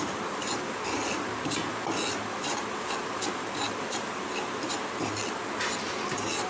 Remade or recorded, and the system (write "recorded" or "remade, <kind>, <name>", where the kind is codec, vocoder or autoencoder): recorded